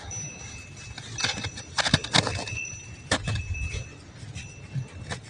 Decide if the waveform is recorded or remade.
recorded